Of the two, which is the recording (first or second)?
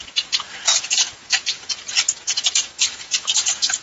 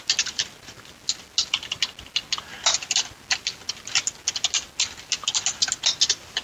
second